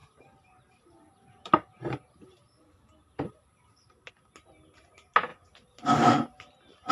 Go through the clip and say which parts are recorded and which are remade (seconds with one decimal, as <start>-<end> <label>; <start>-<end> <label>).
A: 0.0-4.1 remade; 4.1-5.3 recorded; 5.3-6.5 remade; 6.5-6.9 recorded